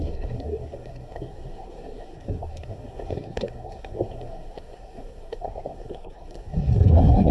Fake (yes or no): yes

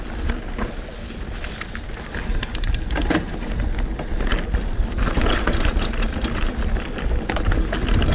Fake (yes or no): no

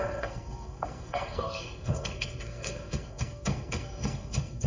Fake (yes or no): yes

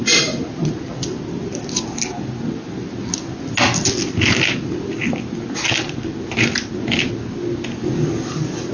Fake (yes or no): no